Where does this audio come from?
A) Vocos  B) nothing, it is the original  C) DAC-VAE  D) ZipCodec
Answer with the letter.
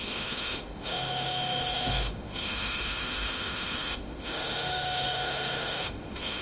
C